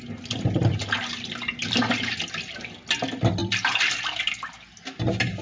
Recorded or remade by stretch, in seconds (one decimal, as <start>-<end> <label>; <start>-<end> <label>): 0.0-3.4 recorded; 3.4-4.2 remade; 4.2-5.4 recorded